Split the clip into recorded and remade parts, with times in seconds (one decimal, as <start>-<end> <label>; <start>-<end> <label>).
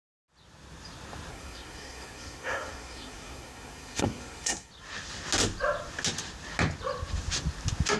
0.0-1.3 recorded; 1.3-4.7 remade; 4.7-8.0 recorded